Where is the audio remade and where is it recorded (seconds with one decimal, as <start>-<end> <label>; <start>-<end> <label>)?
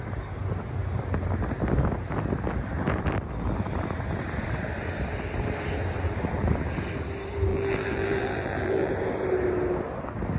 0.0-7.5 recorded; 7.5-8.9 remade; 8.9-10.4 recorded